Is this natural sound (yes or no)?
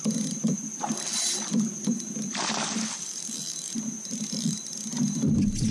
yes